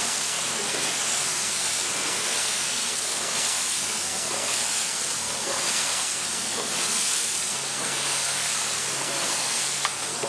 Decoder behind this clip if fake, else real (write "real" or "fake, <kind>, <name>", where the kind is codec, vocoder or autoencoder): fake, codec, SNAC